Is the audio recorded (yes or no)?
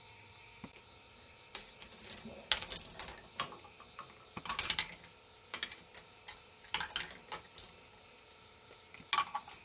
yes